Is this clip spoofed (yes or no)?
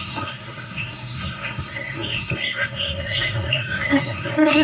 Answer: yes